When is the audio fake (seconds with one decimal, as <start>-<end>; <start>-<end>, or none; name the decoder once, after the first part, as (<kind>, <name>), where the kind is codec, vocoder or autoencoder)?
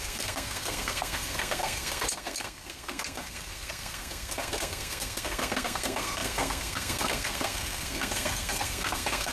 0.0-9.3 (codec, SNAC)